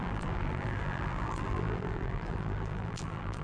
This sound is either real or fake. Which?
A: fake